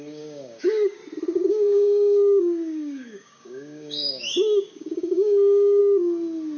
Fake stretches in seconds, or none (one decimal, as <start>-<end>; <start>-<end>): 0.0-1.0; 1.5-5.8